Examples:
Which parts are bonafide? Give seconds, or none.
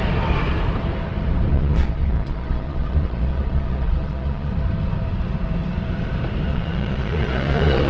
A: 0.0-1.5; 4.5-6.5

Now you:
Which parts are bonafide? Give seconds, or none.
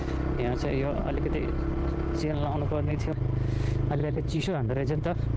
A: 0.0-4.0; 4.7-5.4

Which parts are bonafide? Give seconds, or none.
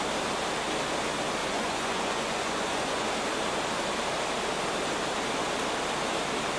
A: 0.0-1.4; 3.1-6.6